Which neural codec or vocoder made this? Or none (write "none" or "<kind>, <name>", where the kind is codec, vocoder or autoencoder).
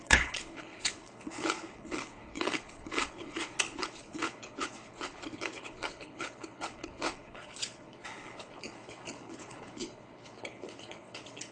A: codec, HILCodec